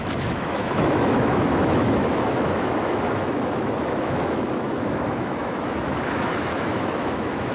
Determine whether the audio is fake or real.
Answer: fake